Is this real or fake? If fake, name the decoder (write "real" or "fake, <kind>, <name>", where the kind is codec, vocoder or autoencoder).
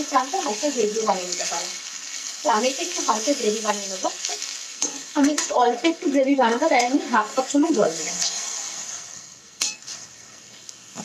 fake, codec, SNAC